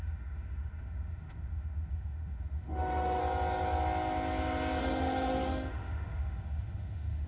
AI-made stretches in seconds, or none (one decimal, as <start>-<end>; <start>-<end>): 0.0-3.2; 4.8-7.3